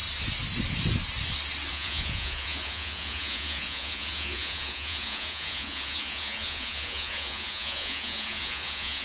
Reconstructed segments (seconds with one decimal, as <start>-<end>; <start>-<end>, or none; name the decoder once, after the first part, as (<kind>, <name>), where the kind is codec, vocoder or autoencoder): 1.7-9.0 (vocoder, Vocos)